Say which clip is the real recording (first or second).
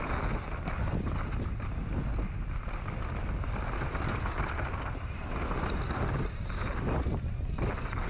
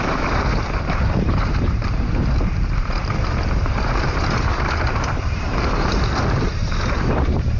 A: first